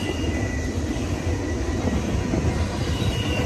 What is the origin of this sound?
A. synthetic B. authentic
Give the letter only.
B